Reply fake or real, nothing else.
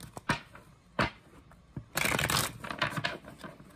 real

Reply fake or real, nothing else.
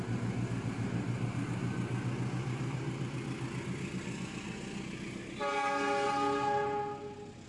real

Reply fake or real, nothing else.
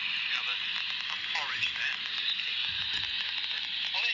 real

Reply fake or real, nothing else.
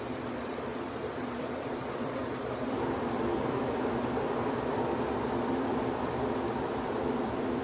fake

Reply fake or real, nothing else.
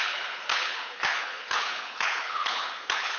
fake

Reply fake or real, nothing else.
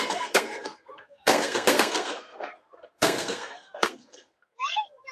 fake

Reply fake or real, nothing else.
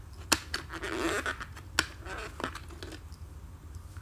real